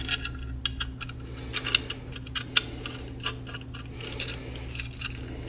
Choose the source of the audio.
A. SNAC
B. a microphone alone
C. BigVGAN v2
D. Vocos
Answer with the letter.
B